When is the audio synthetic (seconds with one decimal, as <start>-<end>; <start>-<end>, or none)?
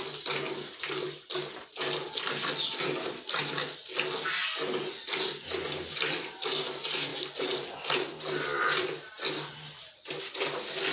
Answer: 7.1-8.1